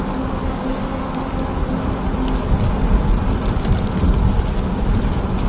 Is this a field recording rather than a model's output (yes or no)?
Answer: yes